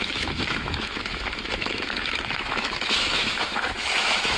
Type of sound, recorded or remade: remade